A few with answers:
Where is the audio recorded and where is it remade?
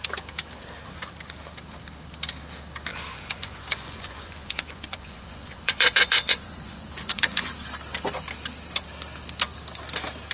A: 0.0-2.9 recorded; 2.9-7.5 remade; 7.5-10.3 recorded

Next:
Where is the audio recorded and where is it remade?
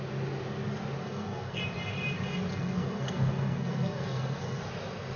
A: 0.0-1.0 recorded; 1.0-1.6 remade; 1.6-2.5 recorded; 2.5-4.6 remade; 4.6-5.2 recorded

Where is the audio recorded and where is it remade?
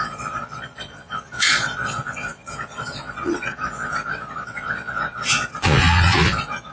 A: 0.0-6.7 remade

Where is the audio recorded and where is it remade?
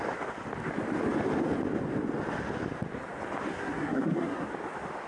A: 0.0-3.5 recorded; 3.5-4.5 remade; 4.5-5.1 recorded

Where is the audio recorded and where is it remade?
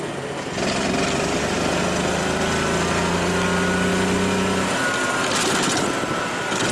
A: 0.0-6.7 recorded